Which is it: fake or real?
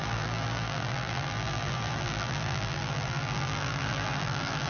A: fake